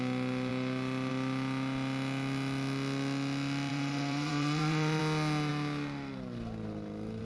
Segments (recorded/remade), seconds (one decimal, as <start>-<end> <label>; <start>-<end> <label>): 0.0-3.7 recorded; 3.7-5.0 remade; 5.0-7.2 recorded